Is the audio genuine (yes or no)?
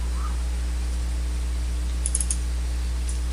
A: yes